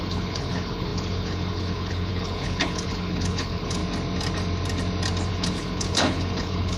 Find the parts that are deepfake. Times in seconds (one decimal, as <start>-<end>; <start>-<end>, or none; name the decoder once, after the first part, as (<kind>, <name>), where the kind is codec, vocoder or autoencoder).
0.0-3.8 (codec, HILCodec); 5.3-6.8